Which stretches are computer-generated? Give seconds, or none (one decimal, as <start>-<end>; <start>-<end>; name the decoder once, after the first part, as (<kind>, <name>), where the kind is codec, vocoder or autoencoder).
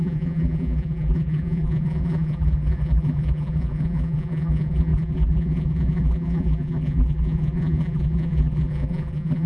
0.0-9.5 (vocoder, BigVGAN v2)